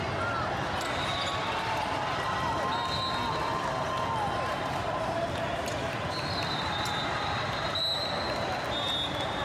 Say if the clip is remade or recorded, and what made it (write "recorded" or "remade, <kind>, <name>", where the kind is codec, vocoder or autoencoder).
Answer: recorded